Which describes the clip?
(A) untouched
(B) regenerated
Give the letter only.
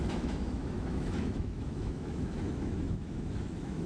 B